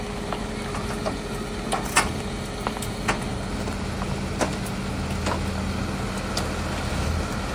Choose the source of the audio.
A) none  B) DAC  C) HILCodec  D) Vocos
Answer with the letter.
A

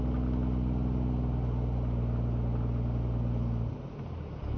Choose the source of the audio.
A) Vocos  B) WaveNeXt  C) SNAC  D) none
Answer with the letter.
D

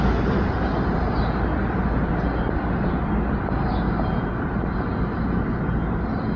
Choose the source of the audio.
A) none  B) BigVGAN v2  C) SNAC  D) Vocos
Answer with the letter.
A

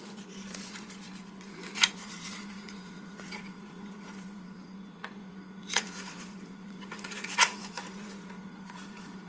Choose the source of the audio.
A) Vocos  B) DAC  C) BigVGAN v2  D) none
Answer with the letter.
A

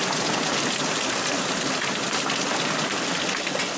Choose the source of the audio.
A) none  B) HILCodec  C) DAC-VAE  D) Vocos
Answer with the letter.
A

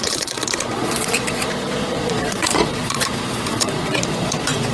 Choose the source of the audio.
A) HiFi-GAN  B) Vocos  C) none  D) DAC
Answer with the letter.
B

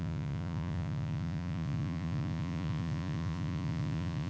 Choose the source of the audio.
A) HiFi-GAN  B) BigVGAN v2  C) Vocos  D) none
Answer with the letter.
C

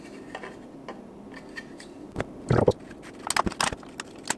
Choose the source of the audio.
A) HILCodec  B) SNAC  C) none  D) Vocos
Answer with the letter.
C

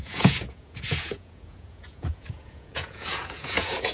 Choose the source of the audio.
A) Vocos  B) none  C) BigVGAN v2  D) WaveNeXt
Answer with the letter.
A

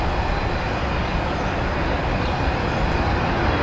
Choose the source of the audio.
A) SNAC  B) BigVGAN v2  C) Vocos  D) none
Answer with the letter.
D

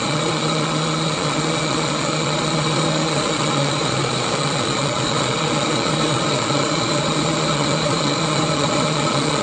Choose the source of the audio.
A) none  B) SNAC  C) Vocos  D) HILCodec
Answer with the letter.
C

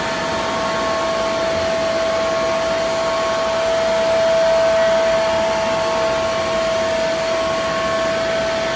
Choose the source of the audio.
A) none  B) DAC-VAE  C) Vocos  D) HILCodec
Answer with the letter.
A